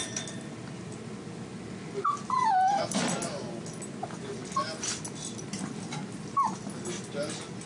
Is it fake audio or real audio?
real